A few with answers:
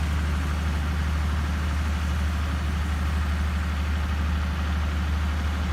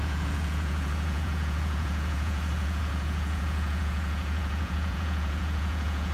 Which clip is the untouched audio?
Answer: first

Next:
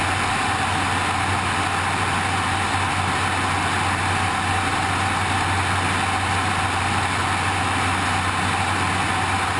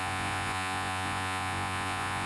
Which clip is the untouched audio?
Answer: first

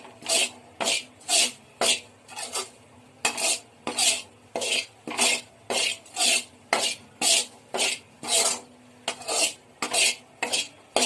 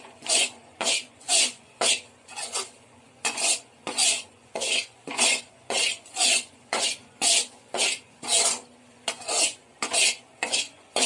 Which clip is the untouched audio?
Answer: first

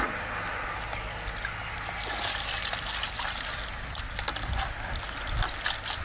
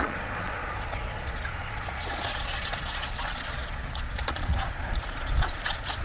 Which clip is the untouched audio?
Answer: first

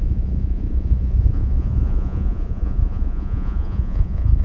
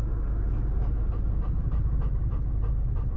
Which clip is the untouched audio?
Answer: second